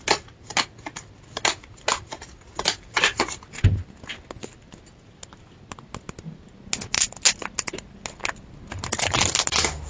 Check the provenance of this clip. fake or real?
real